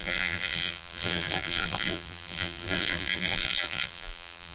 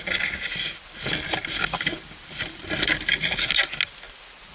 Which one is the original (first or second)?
second